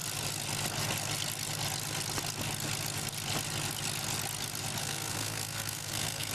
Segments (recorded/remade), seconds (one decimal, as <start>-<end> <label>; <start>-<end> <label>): 0.0-4.8 recorded; 4.8-6.3 remade